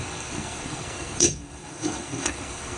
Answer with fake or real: fake